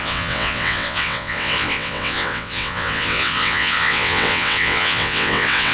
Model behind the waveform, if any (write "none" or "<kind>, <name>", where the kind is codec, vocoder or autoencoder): vocoder, WaveNeXt